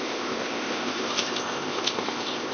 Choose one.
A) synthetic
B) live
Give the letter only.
A